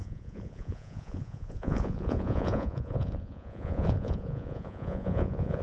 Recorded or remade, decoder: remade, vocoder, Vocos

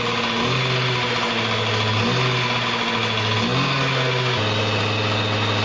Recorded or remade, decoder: recorded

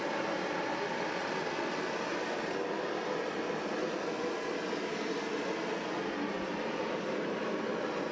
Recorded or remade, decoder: recorded